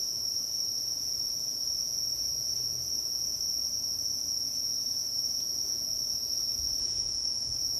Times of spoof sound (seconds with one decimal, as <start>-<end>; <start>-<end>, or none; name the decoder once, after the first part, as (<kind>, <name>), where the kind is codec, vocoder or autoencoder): 0.0-7.8 (vocoder, Vocos)